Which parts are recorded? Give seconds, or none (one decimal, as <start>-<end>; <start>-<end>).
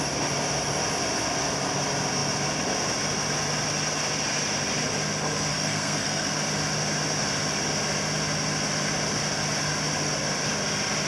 0.0-5.5; 6.3-11.1